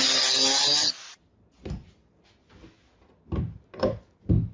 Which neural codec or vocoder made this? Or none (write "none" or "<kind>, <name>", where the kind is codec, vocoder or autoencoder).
none